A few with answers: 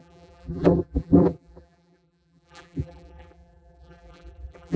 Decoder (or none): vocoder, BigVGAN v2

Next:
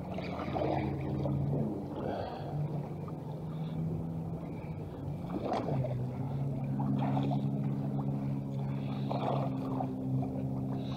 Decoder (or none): none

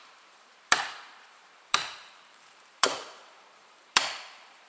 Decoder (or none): vocoder, BigVGAN v2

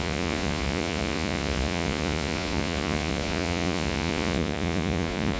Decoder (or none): vocoder, Vocos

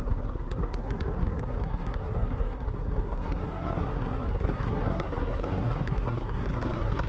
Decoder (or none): codec, SNAC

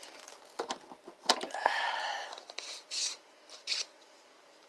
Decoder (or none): none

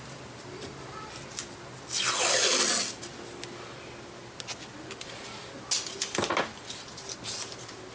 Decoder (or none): none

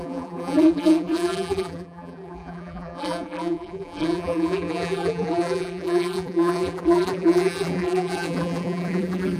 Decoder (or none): vocoder, BigVGAN v2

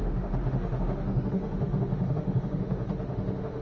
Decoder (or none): autoencoder, DAC-VAE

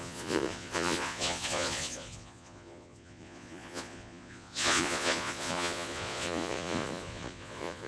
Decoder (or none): vocoder, Vocos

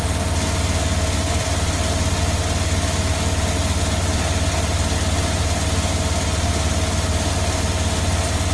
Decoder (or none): none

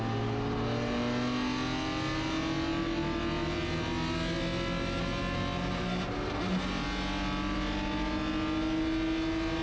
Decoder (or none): none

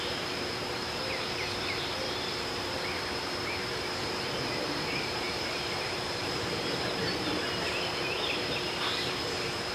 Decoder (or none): vocoder, BigVGAN v2